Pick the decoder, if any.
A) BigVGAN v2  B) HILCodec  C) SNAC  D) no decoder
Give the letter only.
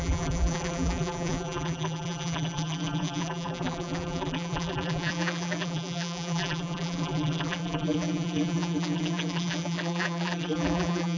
A